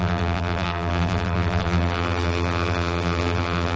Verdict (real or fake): fake